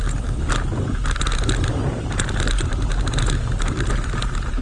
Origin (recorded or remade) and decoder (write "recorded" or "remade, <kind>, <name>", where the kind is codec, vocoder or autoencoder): recorded